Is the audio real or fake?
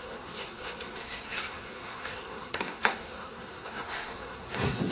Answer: fake